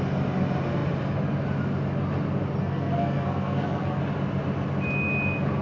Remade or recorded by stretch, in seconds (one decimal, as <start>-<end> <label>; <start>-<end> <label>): 0.0-2.6 recorded; 2.6-4.0 remade; 4.0-5.6 recorded